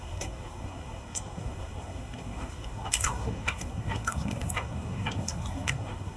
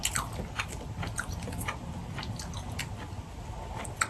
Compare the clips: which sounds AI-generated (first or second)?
first